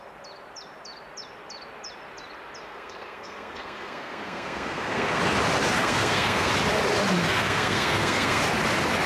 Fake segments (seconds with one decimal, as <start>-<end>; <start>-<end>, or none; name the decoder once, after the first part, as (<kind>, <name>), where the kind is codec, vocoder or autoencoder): 2.6-5.2 (codec, SNAC); 5.8-6.5; 7.2-8.4